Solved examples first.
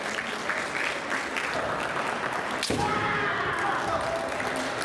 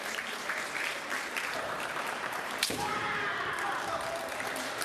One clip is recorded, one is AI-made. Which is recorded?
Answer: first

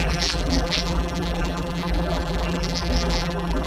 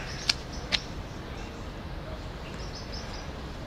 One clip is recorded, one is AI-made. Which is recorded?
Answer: second